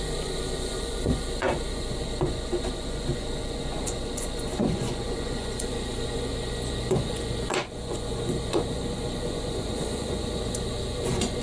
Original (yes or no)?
no